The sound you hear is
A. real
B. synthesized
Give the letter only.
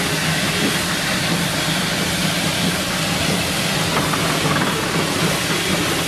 A